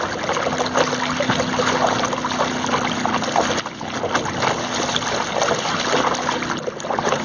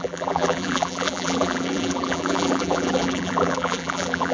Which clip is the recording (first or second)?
first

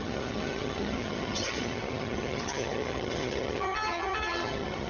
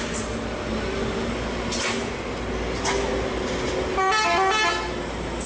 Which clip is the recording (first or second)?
second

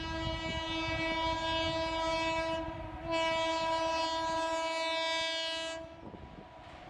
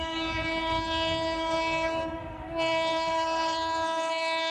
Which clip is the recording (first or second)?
first